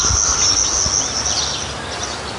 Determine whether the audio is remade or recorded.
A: recorded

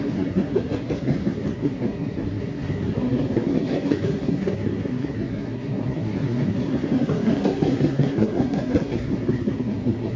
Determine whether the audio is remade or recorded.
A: remade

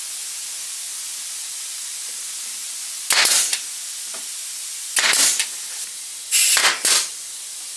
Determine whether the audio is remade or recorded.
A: recorded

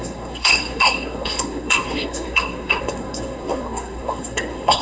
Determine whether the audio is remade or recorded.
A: remade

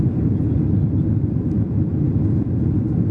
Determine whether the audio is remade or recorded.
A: recorded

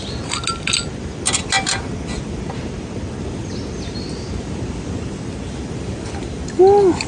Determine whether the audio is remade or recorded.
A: recorded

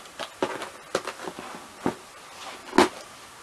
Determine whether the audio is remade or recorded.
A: recorded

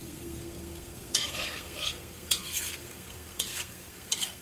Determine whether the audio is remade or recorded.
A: remade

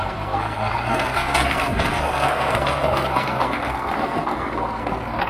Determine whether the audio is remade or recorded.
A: remade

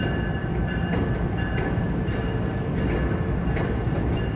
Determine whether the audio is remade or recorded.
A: recorded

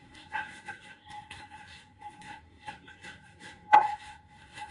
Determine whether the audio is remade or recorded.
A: remade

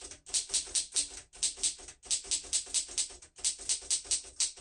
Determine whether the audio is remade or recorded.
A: recorded